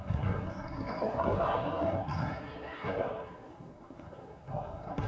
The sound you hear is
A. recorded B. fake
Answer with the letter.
B